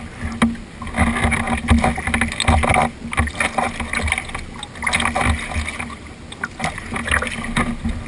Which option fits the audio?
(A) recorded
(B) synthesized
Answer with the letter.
A